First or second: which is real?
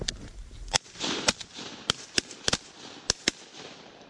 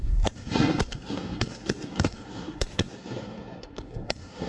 first